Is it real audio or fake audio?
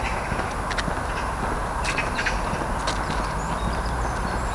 real